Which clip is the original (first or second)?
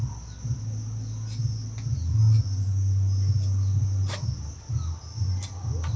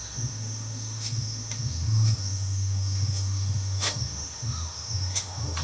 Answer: first